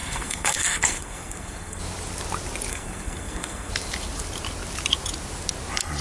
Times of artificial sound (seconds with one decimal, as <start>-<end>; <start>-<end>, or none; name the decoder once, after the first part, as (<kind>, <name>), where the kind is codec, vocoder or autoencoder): 0.0-1.8 (codec, SNAC); 2.7-3.7